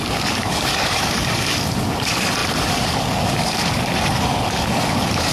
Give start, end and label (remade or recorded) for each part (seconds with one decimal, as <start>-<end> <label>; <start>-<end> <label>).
0.0-5.3 remade